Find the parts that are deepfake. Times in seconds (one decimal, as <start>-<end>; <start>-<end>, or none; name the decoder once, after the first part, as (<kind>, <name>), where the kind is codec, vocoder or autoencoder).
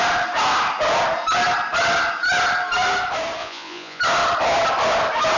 3.4-4.0 (vocoder, Vocos)